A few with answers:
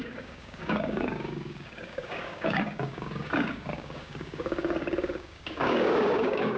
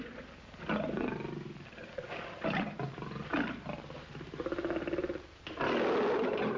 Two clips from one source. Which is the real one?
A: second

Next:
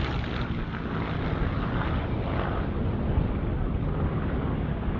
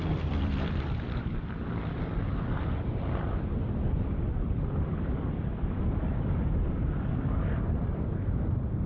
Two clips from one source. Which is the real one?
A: first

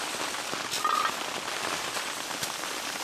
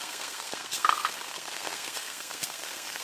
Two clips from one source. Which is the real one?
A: first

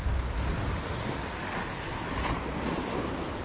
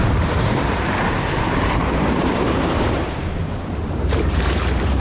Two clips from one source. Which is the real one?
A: first